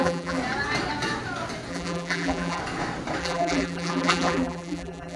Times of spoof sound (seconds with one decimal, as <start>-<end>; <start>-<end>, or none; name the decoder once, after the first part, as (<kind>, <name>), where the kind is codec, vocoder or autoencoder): 0.0-0.4 (vocoder, BigVGAN v2); 1.7-2.6; 3.2-5.2